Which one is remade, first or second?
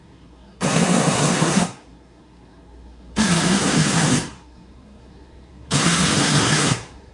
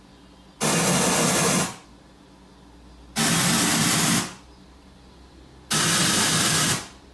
first